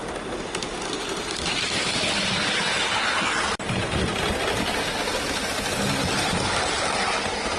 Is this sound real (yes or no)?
yes